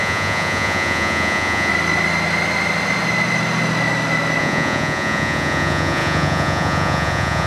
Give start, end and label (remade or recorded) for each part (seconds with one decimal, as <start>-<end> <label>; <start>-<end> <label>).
0.0-1.7 remade; 1.7-4.4 recorded; 4.4-7.5 remade